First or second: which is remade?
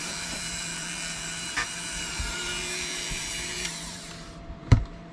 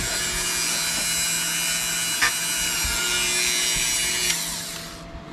first